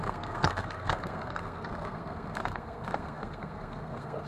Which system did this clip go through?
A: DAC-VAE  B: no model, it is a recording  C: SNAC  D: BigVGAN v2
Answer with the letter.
C